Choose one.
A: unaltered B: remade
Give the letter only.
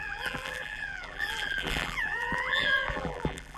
B